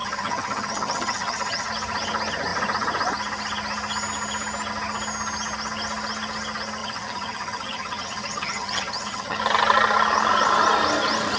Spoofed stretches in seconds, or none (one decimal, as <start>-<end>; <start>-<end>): 0.0-1.7; 6.8-9.4